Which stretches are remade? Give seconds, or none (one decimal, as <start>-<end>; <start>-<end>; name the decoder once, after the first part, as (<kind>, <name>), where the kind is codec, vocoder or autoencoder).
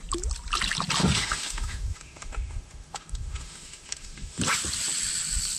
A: 1.0-4.4 (autoencoder, DAC-VAE)